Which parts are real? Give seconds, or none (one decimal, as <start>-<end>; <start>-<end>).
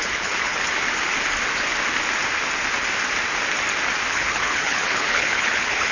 0.6-4.1